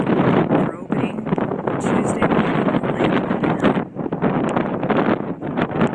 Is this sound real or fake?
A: real